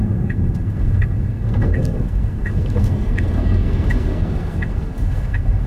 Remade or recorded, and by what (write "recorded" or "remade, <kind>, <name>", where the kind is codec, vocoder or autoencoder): remade, codec, SNAC